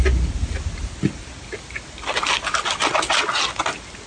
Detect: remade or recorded recorded